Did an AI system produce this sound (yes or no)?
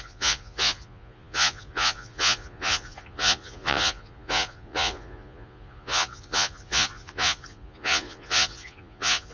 yes